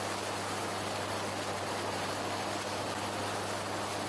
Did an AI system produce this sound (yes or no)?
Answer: no